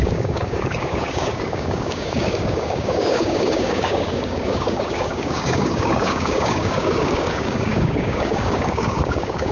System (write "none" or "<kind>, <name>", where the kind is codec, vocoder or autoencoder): codec, DAC